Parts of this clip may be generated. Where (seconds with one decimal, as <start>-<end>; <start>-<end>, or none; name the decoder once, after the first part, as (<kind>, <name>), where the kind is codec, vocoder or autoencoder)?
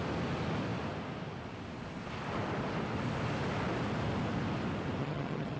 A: 5.0-5.6 (vocoder, HiFi-GAN)